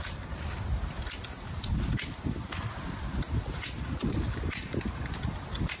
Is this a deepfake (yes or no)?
yes